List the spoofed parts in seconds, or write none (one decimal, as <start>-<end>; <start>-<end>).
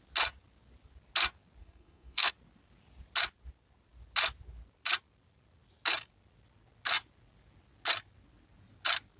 1.6-2.3